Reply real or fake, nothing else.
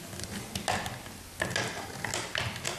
real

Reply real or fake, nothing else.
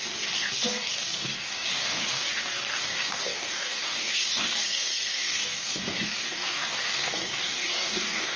fake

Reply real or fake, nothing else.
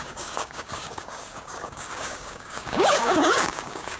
fake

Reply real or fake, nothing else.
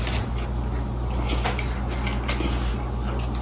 real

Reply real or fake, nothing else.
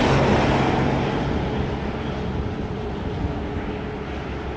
real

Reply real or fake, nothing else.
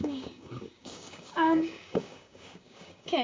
fake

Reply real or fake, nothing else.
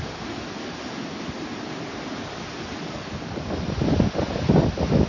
real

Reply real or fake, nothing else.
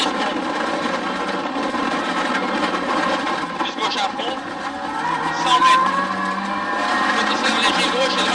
real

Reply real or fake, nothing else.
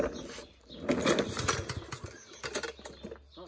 real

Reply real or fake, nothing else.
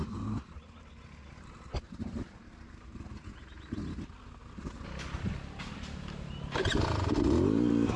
real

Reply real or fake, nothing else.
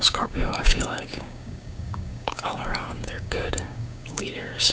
fake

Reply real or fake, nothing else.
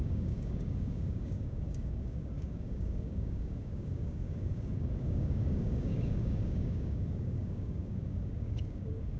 fake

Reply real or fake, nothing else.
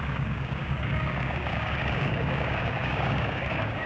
fake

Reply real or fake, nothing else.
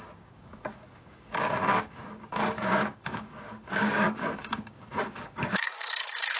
fake